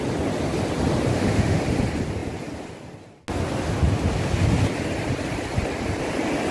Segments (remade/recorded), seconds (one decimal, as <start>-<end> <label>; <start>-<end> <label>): 0.0-1.1 recorded; 1.1-1.6 remade; 1.6-6.5 recorded